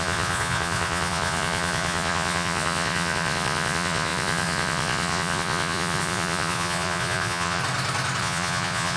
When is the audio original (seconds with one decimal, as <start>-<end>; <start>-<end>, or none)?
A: 7.6-8.2